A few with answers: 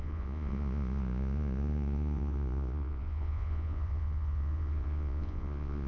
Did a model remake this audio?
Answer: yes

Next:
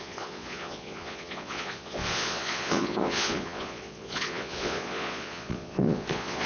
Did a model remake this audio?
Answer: yes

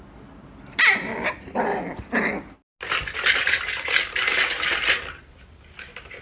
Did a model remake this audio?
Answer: no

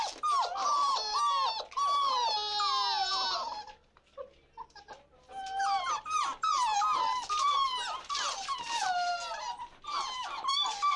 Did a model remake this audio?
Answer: no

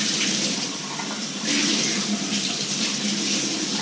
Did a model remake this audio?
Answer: yes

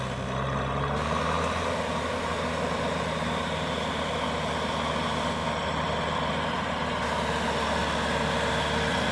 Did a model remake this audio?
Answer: no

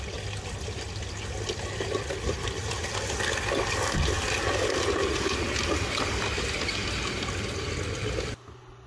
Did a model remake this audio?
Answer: no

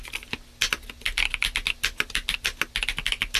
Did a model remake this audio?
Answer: no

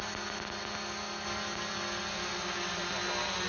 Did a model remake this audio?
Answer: no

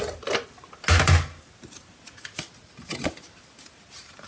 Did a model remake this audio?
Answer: no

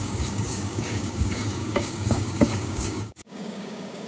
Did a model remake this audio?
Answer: yes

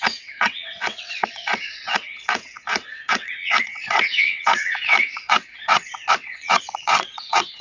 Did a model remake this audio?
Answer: yes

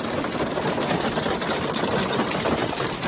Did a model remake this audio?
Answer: no